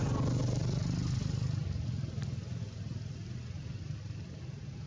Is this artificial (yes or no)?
no